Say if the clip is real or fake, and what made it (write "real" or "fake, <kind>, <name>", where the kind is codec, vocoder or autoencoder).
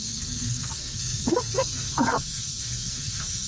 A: fake, codec, SNAC